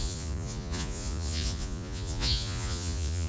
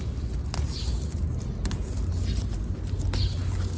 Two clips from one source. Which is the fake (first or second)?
first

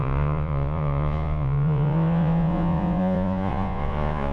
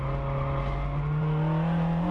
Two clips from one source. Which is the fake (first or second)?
first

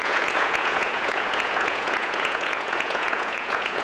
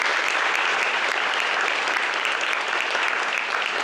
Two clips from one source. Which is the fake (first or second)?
first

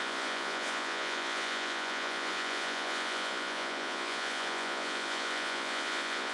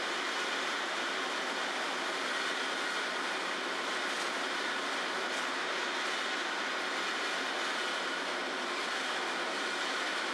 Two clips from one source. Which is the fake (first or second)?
first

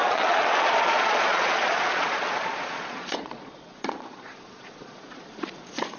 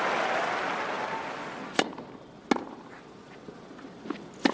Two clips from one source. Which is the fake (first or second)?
first